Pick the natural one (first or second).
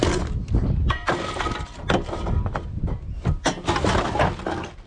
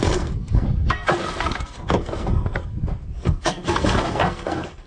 first